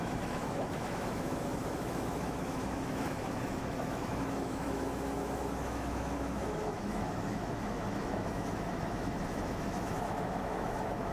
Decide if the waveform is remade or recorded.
remade